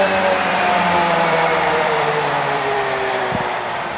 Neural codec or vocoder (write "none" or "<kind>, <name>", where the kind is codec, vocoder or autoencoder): vocoder, BigVGAN v2